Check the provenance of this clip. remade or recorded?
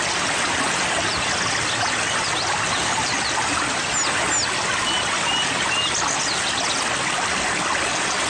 recorded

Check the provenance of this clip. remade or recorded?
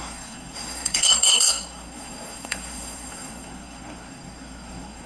remade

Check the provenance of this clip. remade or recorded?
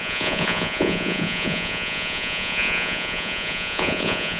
remade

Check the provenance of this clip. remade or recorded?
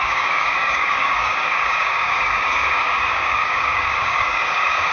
remade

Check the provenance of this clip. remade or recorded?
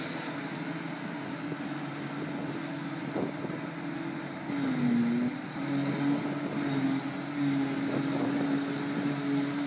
recorded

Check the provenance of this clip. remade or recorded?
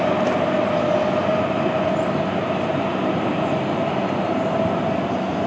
recorded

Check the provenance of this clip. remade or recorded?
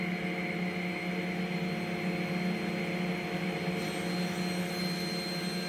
recorded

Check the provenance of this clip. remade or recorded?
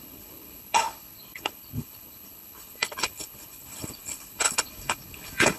remade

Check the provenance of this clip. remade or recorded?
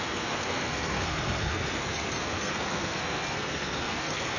remade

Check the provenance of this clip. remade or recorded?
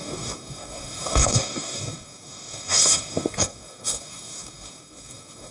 remade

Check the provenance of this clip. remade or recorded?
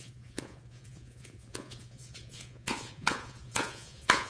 remade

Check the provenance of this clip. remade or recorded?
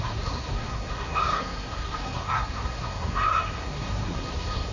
remade